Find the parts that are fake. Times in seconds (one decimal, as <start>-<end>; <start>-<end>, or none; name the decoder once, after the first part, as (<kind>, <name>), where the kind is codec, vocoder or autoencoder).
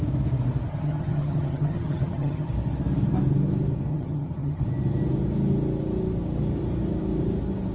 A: 0.7-2.5 (vocoder, HiFi-GAN); 3.9-4.6